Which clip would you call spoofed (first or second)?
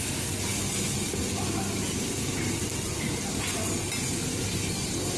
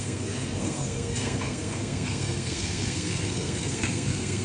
second